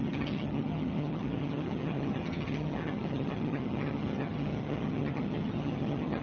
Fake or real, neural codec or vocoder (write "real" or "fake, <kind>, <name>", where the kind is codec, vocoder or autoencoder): fake, vocoder, HiFi-GAN